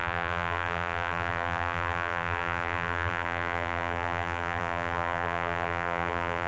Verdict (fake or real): fake